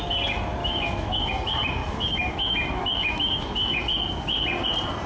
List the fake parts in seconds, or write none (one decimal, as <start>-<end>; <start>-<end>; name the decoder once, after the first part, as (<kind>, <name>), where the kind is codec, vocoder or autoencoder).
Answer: 0.6-1.3 (autoencoder, DAC-VAE); 1.8-3.8